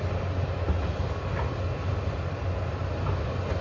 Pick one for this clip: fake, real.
real